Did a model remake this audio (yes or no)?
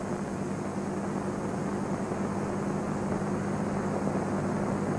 no